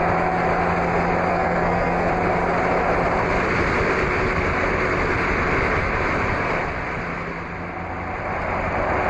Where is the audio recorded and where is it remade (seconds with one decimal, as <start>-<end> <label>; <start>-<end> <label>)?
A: 0.0-1.3 recorded; 1.3-2.1 remade; 2.1-9.1 recorded